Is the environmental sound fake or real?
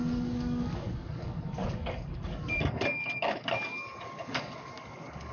fake